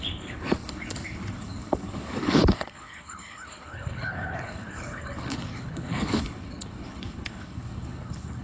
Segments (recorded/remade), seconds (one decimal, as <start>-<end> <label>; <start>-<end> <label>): 0.0-8.4 remade